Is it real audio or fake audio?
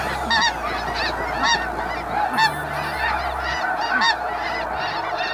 real